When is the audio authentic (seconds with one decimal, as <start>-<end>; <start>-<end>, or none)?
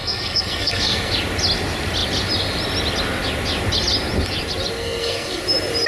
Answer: 1.1-4.8; 5.4-5.9